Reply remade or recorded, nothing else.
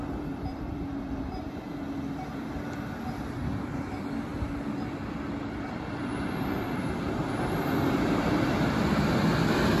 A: recorded